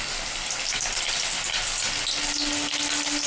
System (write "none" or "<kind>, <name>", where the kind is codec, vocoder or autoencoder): none